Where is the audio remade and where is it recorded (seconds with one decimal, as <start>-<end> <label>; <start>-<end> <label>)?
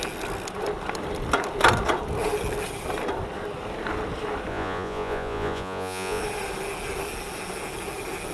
0.0-4.5 recorded; 4.5-6.2 remade; 6.2-8.3 recorded